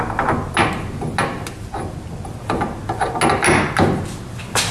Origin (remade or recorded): recorded